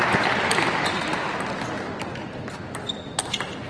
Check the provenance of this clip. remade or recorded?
recorded